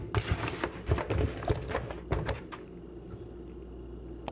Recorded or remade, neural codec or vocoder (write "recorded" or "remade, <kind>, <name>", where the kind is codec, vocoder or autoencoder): recorded